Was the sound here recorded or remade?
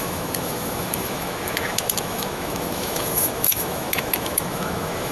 remade